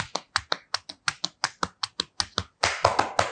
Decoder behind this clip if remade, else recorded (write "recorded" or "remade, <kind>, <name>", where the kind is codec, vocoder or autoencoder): recorded